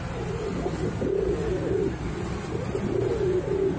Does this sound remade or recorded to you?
recorded